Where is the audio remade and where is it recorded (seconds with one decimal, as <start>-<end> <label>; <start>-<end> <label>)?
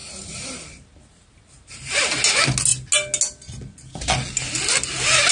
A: 0.0-2.2 remade; 2.2-5.3 recorded